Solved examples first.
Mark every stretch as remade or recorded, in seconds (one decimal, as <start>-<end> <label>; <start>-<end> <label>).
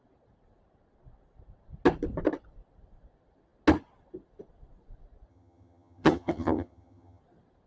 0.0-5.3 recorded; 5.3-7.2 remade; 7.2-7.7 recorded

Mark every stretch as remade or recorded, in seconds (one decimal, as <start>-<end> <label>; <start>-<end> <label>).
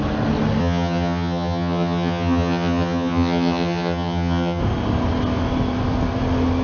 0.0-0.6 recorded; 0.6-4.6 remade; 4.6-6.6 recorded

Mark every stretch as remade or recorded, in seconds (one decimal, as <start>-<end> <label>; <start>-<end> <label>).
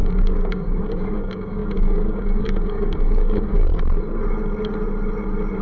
0.0-3.7 remade; 3.7-5.6 recorded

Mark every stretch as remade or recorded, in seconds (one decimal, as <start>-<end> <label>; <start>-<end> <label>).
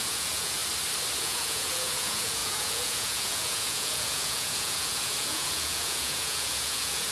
0.0-0.6 remade; 0.6-1.2 recorded; 1.2-7.1 remade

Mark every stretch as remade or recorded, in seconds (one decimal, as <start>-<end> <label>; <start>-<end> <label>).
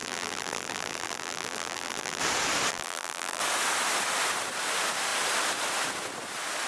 0.0-2.2 remade; 2.2-2.7 recorded; 2.7-3.4 remade; 3.4-6.7 recorded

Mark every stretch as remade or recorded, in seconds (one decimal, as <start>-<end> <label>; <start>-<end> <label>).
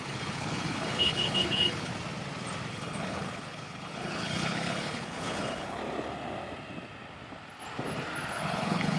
0.0-1.9 remade; 1.9-2.7 recorded; 2.7-5.8 remade; 5.8-8.3 recorded; 8.3-9.0 remade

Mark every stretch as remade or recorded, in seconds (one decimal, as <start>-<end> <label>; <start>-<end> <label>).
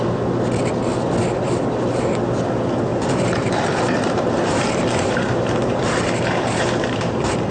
0.0-2.9 recorded; 2.9-7.5 remade